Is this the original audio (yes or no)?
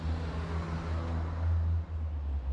yes